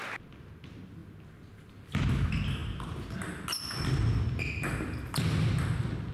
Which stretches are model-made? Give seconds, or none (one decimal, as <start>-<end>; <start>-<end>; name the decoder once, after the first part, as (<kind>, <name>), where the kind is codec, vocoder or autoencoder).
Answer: none